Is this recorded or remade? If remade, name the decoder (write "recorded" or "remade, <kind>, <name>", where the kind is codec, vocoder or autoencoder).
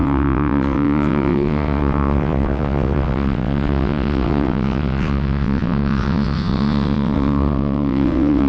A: remade, vocoder, WaveNeXt